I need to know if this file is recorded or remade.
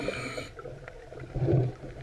recorded